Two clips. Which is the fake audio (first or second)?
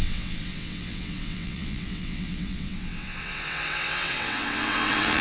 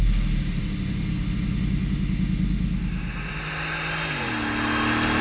first